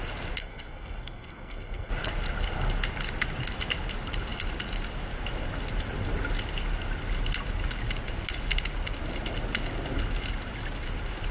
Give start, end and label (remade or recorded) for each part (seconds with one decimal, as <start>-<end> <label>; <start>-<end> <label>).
0.0-0.4 recorded; 0.4-1.9 remade; 1.9-11.3 recorded